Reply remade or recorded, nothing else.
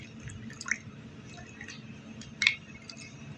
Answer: remade